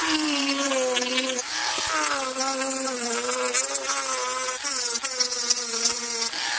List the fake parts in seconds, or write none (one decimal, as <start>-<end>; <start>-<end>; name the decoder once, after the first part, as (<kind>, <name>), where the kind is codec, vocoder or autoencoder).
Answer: 0.0-0.7 (vocoder, BigVGAN v2)